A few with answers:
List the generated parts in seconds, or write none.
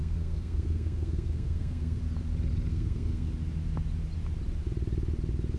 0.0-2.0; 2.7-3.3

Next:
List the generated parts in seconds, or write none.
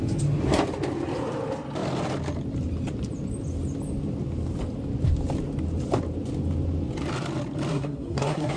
7.7-8.6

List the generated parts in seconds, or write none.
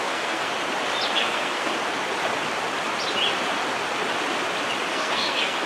0.0-0.5; 1.1-1.7; 4.9-5.7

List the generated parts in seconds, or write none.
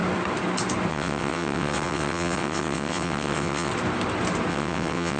0.9-3.7; 4.5-5.2